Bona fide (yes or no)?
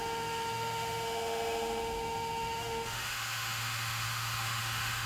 no